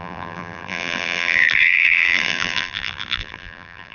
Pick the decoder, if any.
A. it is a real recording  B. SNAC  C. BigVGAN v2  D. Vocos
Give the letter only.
C